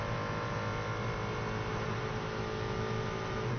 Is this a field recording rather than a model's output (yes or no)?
yes